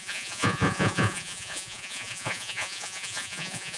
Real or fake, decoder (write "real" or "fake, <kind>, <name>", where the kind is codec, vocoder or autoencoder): fake, vocoder, Vocos